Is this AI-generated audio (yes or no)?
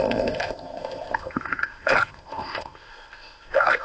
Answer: yes